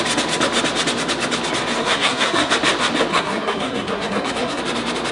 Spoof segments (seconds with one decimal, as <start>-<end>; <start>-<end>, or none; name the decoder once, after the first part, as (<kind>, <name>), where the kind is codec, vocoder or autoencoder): 1.8-2.5 (codec, SNAC); 3.1-4.6